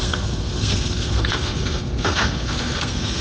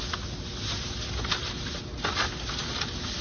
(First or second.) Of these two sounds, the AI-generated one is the first